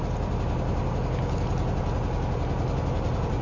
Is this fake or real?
real